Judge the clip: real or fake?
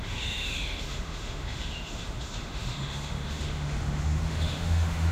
fake